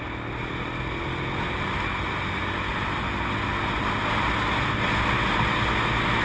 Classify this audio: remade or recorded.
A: recorded